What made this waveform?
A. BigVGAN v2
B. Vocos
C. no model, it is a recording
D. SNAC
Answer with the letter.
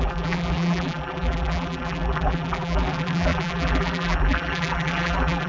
A